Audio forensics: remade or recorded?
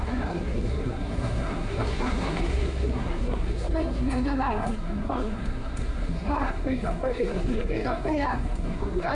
remade